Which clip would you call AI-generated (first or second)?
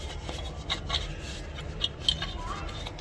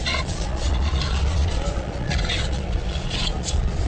second